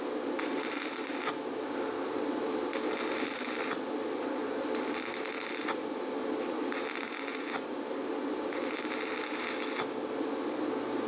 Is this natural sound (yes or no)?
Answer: yes